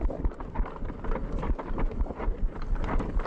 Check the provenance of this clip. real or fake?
real